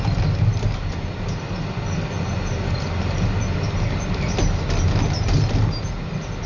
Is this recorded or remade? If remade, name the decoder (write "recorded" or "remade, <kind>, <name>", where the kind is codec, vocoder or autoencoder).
recorded